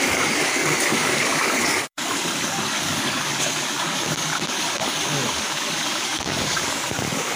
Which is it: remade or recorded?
remade